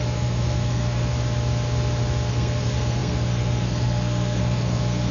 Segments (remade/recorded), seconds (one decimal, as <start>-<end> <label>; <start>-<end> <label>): 0.0-1.1 remade; 1.1-2.3 recorded; 2.3-5.1 remade